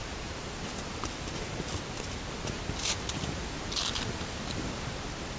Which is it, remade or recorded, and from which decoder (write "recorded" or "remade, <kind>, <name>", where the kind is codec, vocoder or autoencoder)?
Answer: recorded